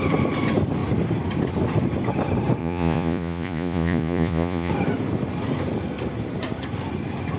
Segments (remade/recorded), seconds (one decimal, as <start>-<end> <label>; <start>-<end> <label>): 0.0-2.6 recorded; 2.6-4.7 remade; 4.7-7.4 recorded